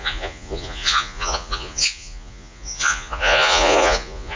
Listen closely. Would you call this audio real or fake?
fake